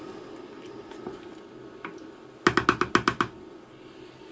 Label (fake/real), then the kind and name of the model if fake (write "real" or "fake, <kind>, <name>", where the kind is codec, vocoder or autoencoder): real